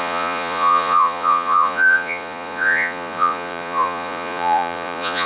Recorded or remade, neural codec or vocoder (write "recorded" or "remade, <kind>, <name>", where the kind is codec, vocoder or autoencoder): remade, vocoder, Vocos